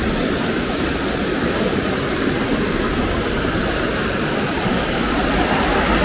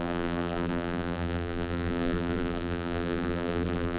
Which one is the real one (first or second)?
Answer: first